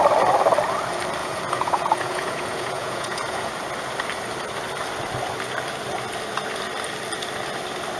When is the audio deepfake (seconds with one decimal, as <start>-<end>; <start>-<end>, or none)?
1.2-3.5

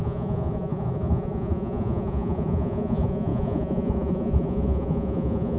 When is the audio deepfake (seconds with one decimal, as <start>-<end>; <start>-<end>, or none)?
0.0-5.6

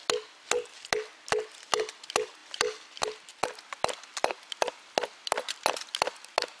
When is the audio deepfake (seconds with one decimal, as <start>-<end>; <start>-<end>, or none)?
none

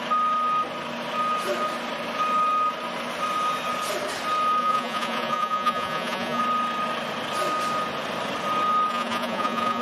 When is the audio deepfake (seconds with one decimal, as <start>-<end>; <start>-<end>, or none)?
4.6-6.4; 8.9-9.8